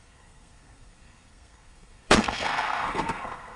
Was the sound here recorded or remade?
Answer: remade